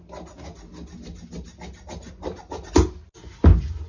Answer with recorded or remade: recorded